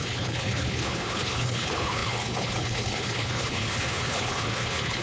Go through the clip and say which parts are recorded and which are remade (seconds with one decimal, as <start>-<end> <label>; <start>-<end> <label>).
0.0-5.0 remade